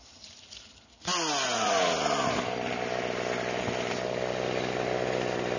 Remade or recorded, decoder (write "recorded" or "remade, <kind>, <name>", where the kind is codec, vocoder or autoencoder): recorded